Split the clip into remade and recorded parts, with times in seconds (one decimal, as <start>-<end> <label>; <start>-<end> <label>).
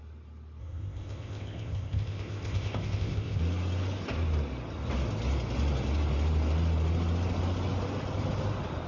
0.0-0.6 recorded; 0.6-3.4 remade; 3.4-8.9 recorded